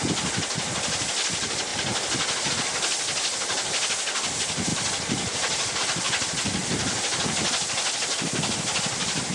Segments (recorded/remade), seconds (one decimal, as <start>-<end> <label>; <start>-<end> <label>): 0.0-9.3 recorded